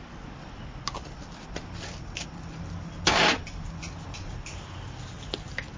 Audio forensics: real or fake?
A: real